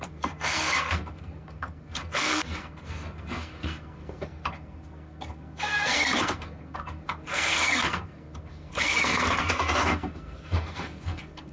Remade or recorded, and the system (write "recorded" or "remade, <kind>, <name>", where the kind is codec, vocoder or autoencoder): remade, codec, SNAC